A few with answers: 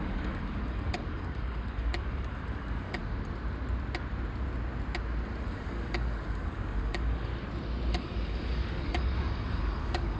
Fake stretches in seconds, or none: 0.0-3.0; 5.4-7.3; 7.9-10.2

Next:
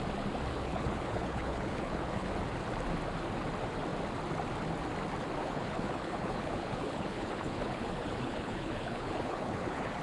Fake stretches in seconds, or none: 0.5-2.3; 5.4-10.0

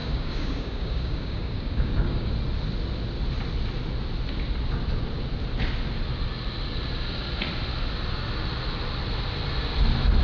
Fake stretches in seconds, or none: 0.0-2.3

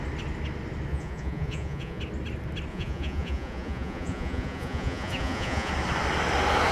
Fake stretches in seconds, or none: 0.9-2.0; 2.7-5.7

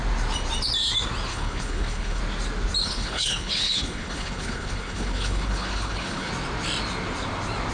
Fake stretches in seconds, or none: 1.3-2.2; 2.8-6.3

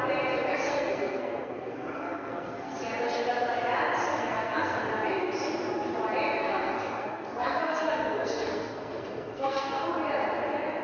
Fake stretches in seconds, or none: 0.5-2.8; 4.1-4.8; 6.4-9.9

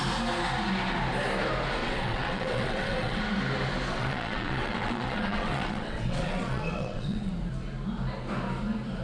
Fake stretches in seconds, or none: 1.8-3.2; 3.9-7.3

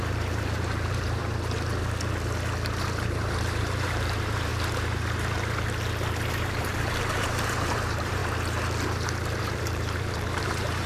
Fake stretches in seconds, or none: 0.0-1.2; 2.8-4.5; 6.3-8.2; 9.4-10.9